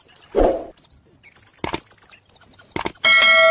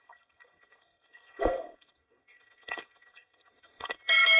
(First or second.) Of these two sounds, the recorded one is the first